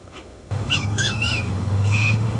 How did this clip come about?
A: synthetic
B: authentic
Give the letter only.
A